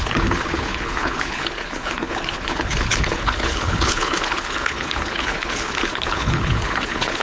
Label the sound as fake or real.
fake